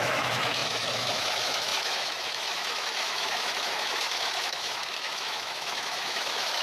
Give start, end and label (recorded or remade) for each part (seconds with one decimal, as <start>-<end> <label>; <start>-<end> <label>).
0.0-6.6 remade